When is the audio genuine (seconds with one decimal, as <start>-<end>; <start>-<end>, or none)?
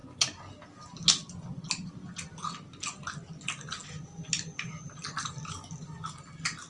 0.0-6.7